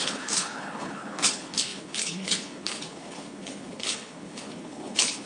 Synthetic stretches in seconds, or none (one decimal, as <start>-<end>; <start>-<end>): 0.0-5.3